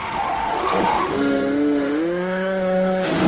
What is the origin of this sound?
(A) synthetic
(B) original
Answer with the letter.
A